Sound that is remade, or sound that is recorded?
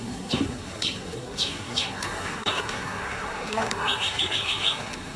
remade